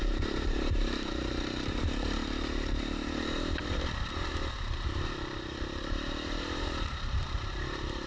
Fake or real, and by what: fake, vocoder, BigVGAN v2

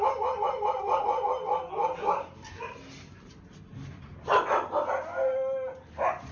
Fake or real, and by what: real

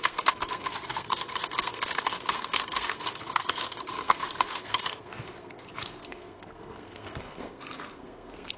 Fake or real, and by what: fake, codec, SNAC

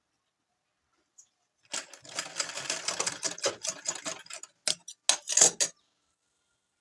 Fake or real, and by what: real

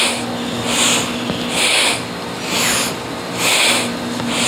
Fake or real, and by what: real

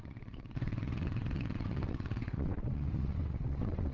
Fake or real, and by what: fake, vocoder, WaveNeXt